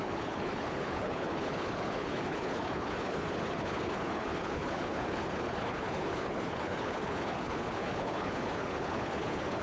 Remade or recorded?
remade